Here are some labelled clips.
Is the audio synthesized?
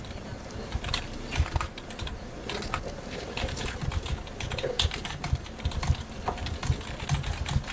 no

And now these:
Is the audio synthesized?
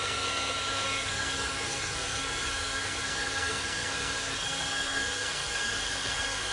yes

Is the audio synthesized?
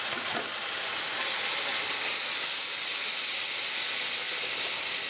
no